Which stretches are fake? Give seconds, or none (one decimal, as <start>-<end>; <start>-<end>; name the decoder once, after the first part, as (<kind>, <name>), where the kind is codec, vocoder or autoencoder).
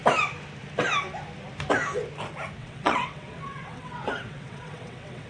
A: 2.6-5.3 (vocoder, WaveNeXt)